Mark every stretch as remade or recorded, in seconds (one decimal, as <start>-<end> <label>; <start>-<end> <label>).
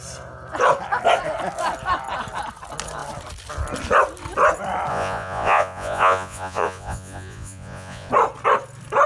0.0-4.9 recorded; 4.9-8.1 remade; 8.1-9.1 recorded